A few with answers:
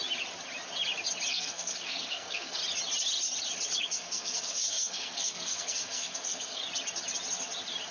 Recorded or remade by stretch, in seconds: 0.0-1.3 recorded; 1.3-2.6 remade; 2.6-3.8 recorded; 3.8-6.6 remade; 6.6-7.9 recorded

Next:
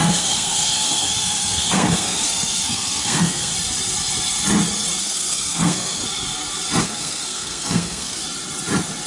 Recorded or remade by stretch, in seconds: 0.0-3.5 remade; 3.5-5.0 recorded; 5.0-6.0 remade; 6.0-6.8 recorded; 6.8-8.2 remade; 8.2-9.1 recorded